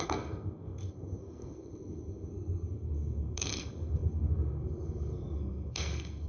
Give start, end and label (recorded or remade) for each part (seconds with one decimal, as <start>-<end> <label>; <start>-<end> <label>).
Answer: 0.0-6.3 remade